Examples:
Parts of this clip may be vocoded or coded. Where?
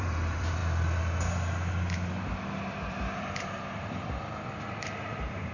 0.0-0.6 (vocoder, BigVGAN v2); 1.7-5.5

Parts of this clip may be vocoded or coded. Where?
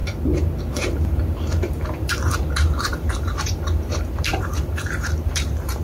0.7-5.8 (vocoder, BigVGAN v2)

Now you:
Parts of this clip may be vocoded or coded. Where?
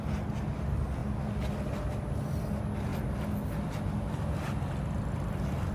none